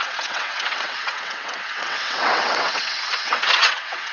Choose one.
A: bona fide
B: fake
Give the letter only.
B